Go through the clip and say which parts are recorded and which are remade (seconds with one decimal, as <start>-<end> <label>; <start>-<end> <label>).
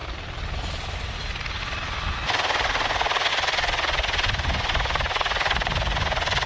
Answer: 0.0-3.3 recorded; 3.3-6.5 remade